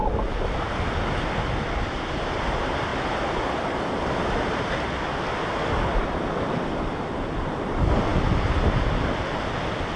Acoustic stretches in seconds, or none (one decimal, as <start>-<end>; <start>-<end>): 0.0-10.0